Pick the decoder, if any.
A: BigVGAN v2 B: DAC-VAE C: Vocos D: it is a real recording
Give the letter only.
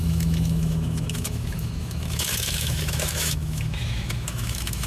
B